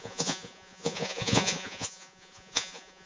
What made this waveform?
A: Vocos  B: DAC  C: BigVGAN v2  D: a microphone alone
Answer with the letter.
A